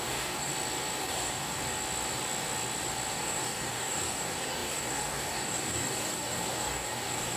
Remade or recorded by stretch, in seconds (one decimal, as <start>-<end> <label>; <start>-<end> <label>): 0.0-0.5 remade; 0.5-1.0 recorded; 1.0-1.6 remade; 1.6-3.1 recorded; 3.1-7.4 remade